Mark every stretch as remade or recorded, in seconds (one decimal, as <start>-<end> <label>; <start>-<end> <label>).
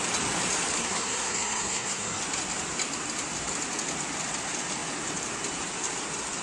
0.0-0.8 recorded; 0.8-2.2 remade; 2.2-6.4 recorded